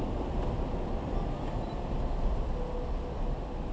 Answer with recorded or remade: recorded